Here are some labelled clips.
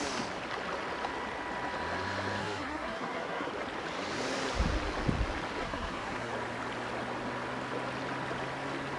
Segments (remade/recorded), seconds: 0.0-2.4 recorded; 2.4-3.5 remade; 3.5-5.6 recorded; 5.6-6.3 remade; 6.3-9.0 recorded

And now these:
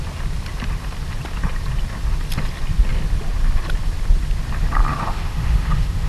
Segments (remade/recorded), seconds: 0.0-4.9 recorded; 4.9-6.1 remade

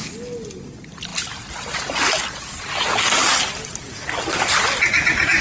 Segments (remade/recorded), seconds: 0.0-5.4 recorded